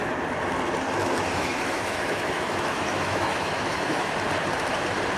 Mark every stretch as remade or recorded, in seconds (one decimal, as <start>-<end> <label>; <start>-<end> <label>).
0.0-1.0 recorded; 1.0-4.1 remade; 4.1-5.2 recorded